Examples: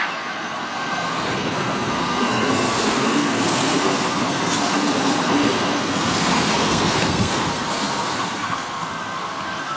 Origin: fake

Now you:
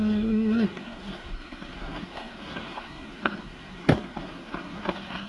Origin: fake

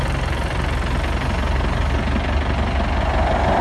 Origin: real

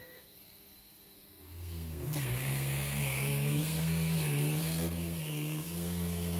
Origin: fake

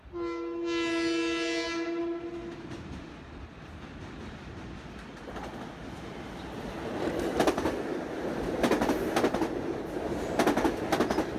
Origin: real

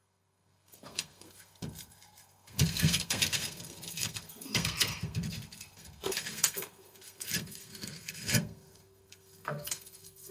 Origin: fake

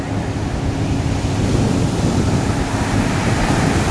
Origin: real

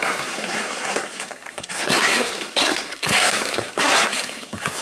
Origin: fake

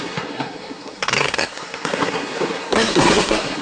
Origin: fake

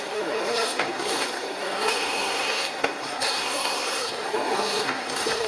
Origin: fake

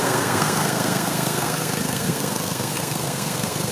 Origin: fake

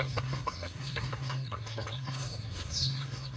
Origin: fake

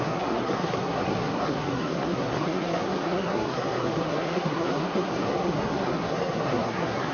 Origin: fake